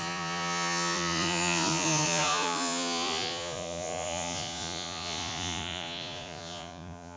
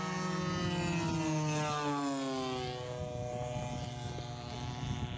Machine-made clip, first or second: first